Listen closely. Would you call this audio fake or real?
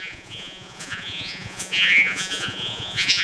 fake